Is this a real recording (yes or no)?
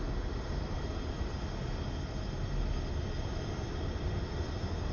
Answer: yes